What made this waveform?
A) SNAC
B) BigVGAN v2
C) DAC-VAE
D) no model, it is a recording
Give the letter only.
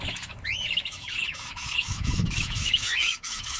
C